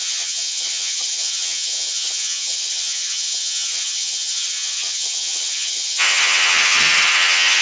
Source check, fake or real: fake